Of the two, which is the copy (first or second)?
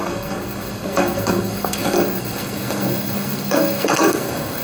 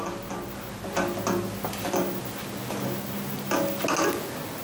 first